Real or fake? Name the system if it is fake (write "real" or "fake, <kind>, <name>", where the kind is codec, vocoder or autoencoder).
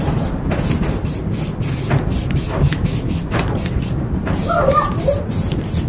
real